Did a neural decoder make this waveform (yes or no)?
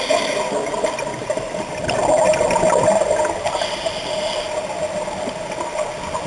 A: no